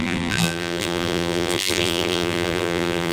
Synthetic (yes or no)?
yes